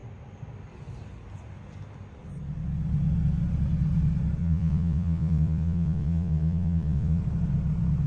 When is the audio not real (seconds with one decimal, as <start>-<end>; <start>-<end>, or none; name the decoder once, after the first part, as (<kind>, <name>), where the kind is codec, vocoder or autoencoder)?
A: 4.4-7.2 (vocoder, Vocos)